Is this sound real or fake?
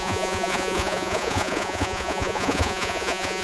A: fake